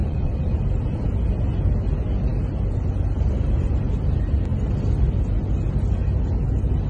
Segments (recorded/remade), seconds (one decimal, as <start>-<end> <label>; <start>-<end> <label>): 0.0-0.6 remade; 0.6-6.9 recorded